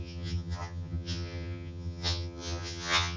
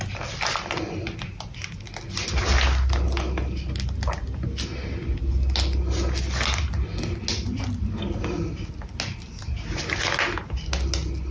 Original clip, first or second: second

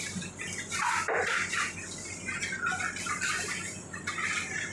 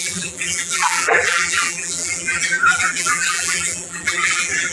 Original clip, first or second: first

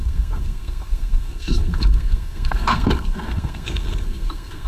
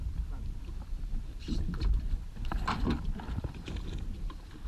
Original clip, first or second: second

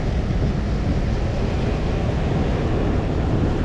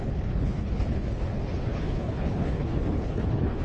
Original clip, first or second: first